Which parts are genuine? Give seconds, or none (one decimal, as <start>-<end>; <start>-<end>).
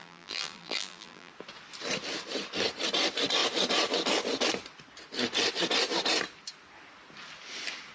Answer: 1.3-7.9